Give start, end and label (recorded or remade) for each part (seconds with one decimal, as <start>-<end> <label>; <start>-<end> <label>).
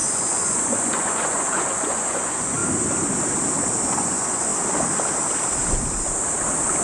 0.0-2.6 remade; 2.6-3.9 recorded; 3.9-4.5 remade; 4.5-6.8 recorded